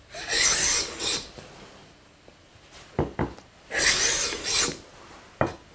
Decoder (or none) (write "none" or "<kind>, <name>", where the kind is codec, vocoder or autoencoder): none